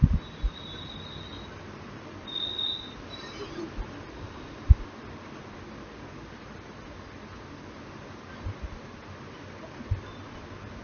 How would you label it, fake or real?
real